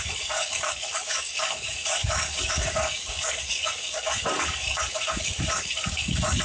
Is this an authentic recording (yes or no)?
no